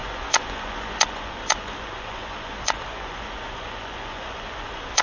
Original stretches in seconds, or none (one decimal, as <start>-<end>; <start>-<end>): none